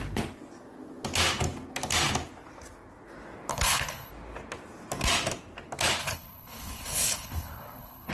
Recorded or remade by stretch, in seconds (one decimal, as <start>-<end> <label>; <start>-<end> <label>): 0.0-3.5 recorded; 3.5-4.1 remade; 4.1-6.0 recorded; 6.0-8.1 remade